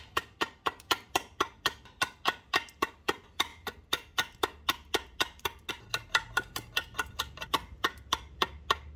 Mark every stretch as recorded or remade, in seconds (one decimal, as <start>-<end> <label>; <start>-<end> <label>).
0.0-9.0 recorded